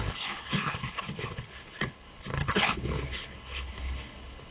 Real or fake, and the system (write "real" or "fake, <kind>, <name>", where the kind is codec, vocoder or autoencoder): fake, codec, HILCodec